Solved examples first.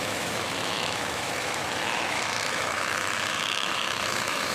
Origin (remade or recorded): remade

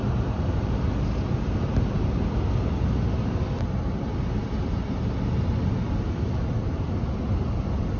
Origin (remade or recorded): recorded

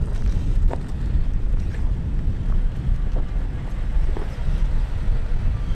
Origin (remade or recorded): recorded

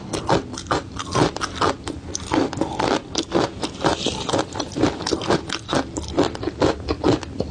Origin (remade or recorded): recorded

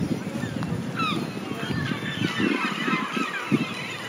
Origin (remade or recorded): recorded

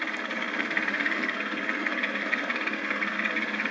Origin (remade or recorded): remade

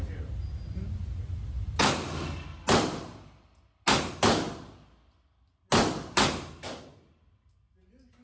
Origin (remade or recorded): recorded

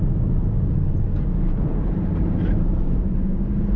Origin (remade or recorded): remade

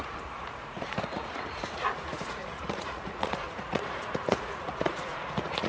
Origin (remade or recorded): remade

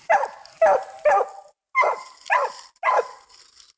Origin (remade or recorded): recorded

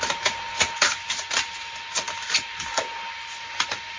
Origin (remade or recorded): recorded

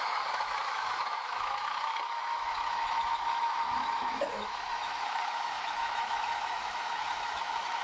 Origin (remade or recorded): remade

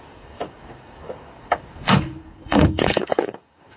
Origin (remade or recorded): remade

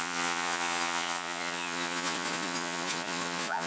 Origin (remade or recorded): remade